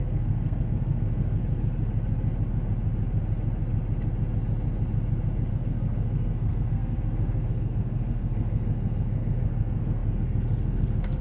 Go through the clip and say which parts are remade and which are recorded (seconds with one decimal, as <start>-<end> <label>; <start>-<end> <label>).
0.0-1.4 remade; 1.4-5.5 recorded; 5.5-11.2 remade